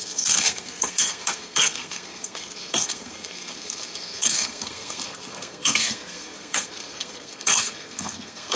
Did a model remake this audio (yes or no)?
yes